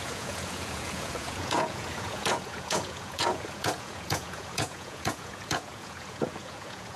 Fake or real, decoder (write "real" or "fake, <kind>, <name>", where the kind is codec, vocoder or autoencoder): fake, vocoder, Vocos